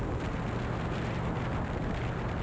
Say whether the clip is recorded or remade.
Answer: recorded